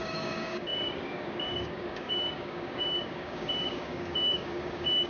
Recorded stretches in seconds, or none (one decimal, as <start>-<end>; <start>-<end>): none